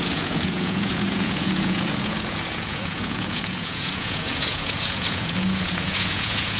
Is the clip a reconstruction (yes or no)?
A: yes